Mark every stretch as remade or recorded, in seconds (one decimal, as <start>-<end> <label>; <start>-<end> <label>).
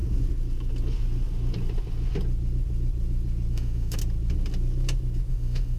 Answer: 0.0-3.5 recorded; 3.5-4.0 remade; 4.0-5.3 recorded; 5.3-5.8 remade